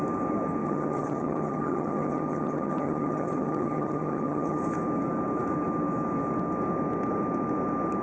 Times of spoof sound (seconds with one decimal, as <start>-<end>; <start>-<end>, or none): 0.6-4.6